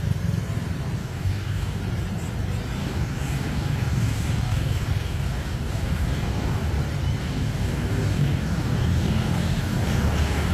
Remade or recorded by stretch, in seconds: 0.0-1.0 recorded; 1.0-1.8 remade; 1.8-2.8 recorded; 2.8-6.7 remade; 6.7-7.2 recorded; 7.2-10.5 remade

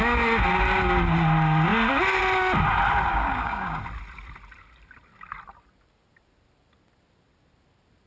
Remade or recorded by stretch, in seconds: 0.0-3.1 recorded; 3.1-3.8 remade; 3.8-8.1 recorded

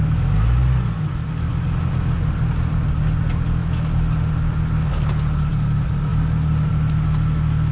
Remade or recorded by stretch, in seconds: 0.0-7.7 recorded

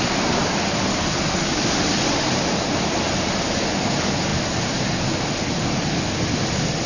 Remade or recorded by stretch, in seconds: 0.0-6.9 recorded

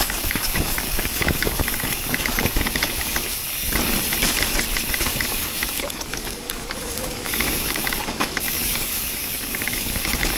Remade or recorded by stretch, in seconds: 0.0-3.4 remade; 3.4-5.0 recorded; 5.0-10.4 remade

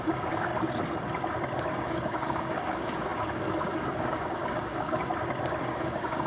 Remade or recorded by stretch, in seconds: 0.0-0.5 remade; 0.5-1.7 recorded; 1.7-5.1 remade; 5.1-5.6 recorded; 5.6-6.3 remade

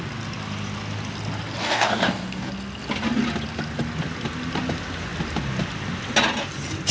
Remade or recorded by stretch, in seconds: 0.0-1.6 recorded; 1.6-2.5 remade; 2.5-6.9 recorded